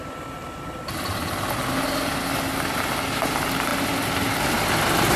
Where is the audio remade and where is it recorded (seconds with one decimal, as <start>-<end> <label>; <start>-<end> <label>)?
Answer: 0.0-5.2 recorded